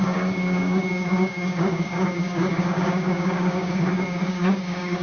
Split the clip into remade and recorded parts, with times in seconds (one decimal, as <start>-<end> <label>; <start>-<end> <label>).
0.0-5.0 remade